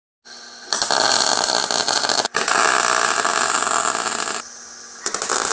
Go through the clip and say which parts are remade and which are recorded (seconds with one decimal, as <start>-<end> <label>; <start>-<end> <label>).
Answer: 0.0-5.5 recorded